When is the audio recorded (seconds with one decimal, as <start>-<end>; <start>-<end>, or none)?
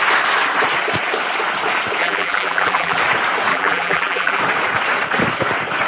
0.0-2.0; 3.0-3.5; 4.4-5.9